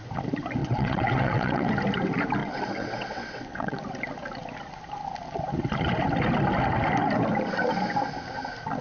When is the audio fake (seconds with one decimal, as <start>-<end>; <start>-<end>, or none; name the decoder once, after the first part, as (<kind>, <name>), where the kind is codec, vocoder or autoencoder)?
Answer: 0.6-1.7 (vocoder, WaveNeXt); 2.4-3.8